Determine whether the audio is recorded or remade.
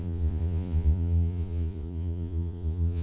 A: remade